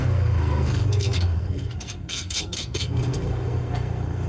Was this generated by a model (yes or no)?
yes